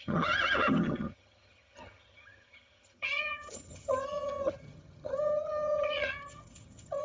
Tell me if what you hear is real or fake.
fake